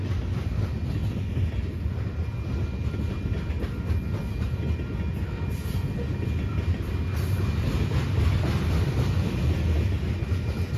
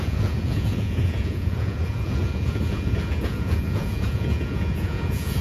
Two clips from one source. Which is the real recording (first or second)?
first